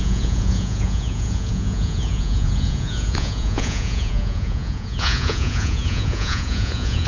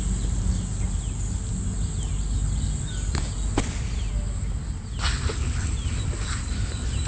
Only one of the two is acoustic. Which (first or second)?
second